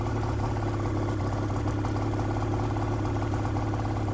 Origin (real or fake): real